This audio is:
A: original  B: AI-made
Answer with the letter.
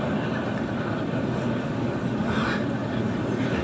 A